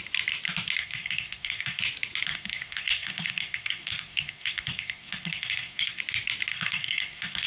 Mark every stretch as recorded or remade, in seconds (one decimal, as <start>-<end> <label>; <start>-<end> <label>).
0.0-0.8 recorded; 0.8-1.8 remade; 1.8-2.3 recorded; 2.3-6.0 remade; 6.0-6.5 recorded; 6.5-7.5 remade

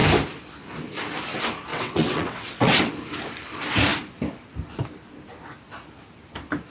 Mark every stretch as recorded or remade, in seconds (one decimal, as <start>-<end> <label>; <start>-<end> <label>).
0.0-1.7 recorded; 1.7-2.9 remade; 2.9-6.7 recorded

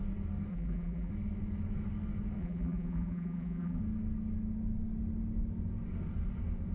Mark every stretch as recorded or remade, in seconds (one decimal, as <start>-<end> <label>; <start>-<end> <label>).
0.0-0.5 recorded; 0.5-1.1 remade; 1.1-2.4 recorded; 2.4-3.8 remade; 3.8-6.7 recorded

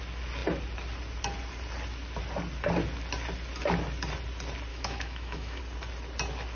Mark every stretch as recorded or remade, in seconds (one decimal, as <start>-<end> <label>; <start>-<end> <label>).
0.0-4.7 recorded; 4.7-5.6 remade; 5.6-6.5 recorded